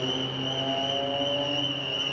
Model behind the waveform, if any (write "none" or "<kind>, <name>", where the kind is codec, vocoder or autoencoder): none